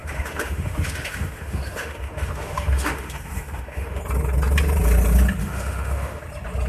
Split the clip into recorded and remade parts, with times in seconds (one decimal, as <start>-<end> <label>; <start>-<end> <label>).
0.0-4.0 remade; 4.0-5.4 recorded; 5.4-6.2 remade; 6.2-6.7 recorded